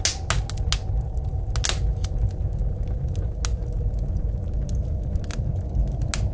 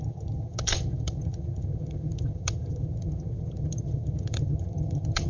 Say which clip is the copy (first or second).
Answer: second